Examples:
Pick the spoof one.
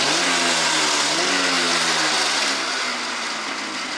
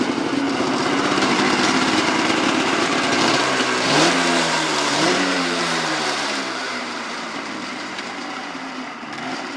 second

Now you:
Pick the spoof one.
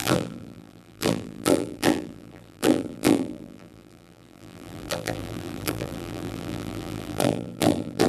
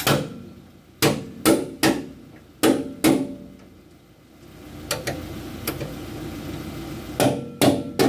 first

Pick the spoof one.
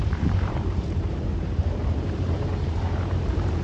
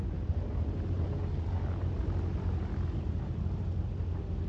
first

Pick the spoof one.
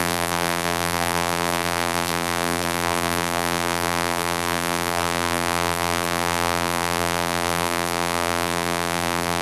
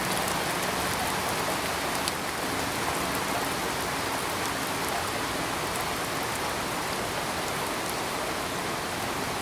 first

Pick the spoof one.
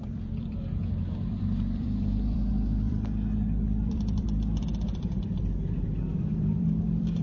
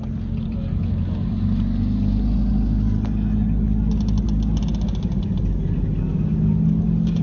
first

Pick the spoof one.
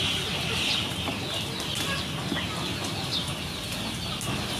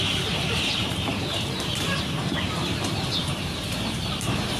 second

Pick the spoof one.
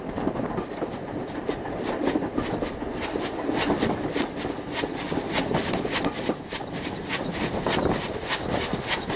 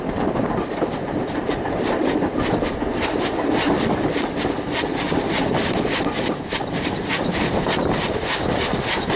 second